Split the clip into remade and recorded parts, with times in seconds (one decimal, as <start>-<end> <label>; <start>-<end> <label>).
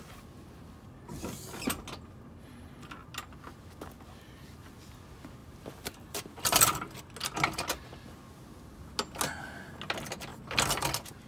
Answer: 0.0-5.4 recorded; 5.4-7.0 remade; 7.0-10.3 recorded; 10.3-10.9 remade; 10.9-11.3 recorded